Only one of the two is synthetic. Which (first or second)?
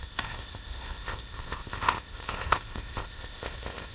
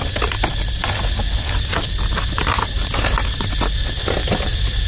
first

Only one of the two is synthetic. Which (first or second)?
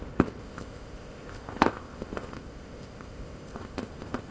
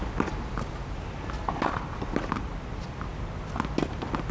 first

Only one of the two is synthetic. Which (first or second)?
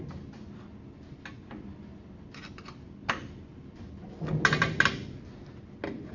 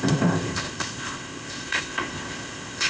second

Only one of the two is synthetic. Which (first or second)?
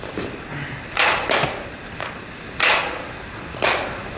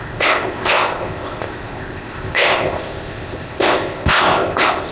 second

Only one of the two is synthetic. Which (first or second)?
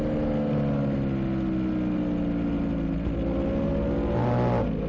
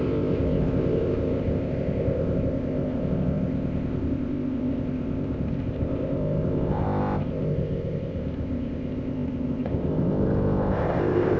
second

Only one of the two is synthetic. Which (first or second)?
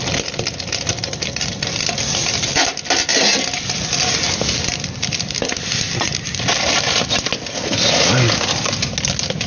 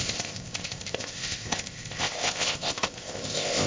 second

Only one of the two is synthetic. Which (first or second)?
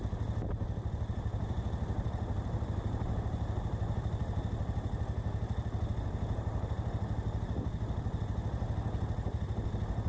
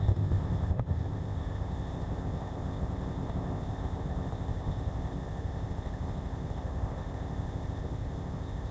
second